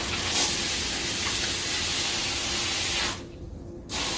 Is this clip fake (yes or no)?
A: no